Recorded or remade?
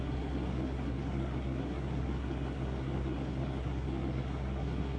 remade